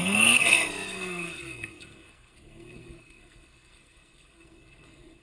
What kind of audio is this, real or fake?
fake